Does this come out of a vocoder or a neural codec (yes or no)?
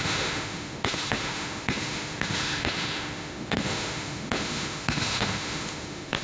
yes